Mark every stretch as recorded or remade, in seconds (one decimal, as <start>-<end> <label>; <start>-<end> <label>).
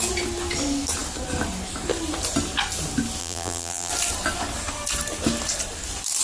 0.0-3.2 recorded; 3.2-3.9 remade; 3.9-6.2 recorded